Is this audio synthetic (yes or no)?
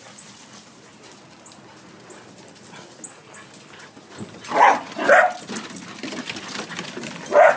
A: no